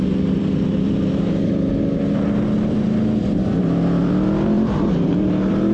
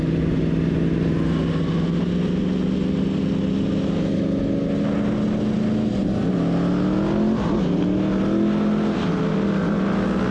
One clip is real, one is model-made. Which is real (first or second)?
second